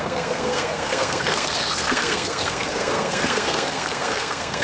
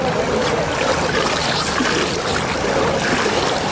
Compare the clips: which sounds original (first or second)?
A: second